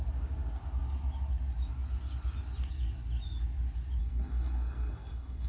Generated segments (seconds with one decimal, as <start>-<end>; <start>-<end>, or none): 4.0-5.5